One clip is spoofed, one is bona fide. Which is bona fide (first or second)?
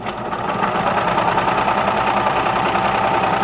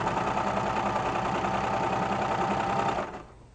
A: second